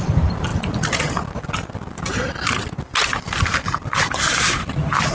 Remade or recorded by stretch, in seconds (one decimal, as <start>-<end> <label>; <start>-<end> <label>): 0.0-5.1 recorded

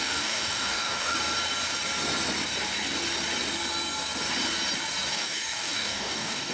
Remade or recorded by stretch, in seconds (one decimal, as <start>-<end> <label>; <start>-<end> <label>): 0.0-1.2 remade; 1.2-5.1 recorded; 5.1-6.5 remade

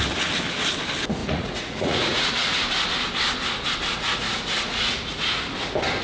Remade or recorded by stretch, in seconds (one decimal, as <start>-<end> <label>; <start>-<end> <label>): 0.0-1.2 recorded; 1.2-2.6 remade; 2.6-3.9 recorded; 3.9-5.4 remade; 5.4-6.0 recorded

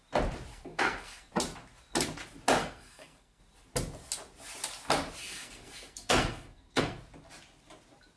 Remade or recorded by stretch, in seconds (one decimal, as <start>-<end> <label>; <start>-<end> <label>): 0.0-0.5 recorded; 0.5-1.3 remade; 1.3-2.6 recorded; 2.6-3.4 remade; 3.4-5.2 recorded; 5.2-7.0 remade; 7.0-8.2 recorded